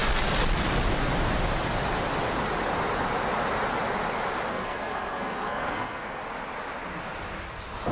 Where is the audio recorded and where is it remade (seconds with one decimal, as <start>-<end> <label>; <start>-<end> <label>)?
0.0-4.5 recorded; 4.5-6.2 remade; 6.2-7.9 recorded